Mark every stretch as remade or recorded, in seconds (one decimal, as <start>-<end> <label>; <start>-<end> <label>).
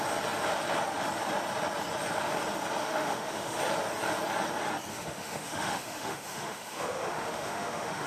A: 0.0-2.8 recorded; 2.8-3.6 remade; 3.6-4.9 recorded; 4.9-8.1 remade